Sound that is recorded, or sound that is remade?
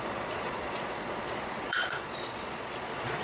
remade